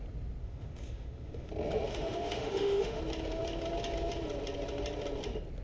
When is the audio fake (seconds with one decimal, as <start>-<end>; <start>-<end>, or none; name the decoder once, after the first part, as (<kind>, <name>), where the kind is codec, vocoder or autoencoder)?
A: 0.4-1.5 (autoencoder, DAC-VAE); 1.9-3.0